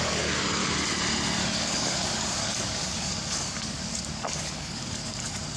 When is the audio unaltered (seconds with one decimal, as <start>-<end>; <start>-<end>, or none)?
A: 0.6-1.4